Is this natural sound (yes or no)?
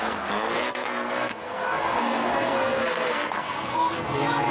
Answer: no